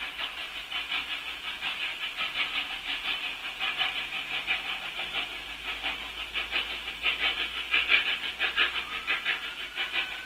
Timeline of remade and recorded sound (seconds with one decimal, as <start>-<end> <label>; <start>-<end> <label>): 0.0-10.3 recorded